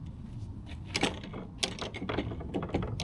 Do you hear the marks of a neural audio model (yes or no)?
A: no